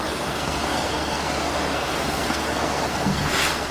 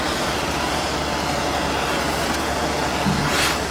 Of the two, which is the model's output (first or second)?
first